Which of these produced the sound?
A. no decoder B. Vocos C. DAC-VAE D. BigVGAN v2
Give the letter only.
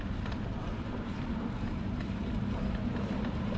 D